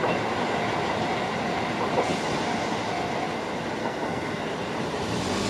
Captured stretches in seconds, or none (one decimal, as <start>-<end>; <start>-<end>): 0.0-3.8; 4.4-5.5